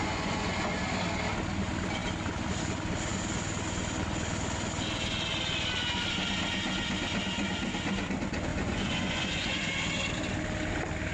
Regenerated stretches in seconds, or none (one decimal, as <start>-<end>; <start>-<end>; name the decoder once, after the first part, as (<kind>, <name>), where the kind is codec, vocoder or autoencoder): 0.0-0.8 (vocoder, Vocos); 8.5-9.7